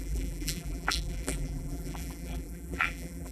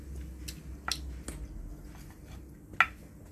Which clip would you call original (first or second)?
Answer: second